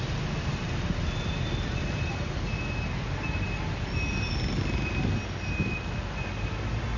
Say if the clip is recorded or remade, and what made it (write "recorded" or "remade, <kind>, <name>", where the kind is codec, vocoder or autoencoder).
recorded